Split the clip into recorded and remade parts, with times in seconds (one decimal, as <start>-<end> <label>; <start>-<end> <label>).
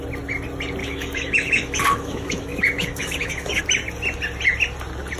0.0-0.8 recorded; 0.8-3.6 remade; 3.6-5.2 recorded